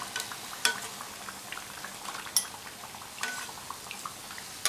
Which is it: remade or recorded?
recorded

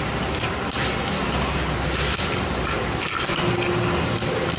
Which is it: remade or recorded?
recorded